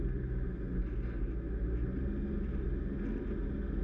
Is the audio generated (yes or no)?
no